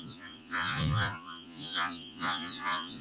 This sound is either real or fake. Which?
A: fake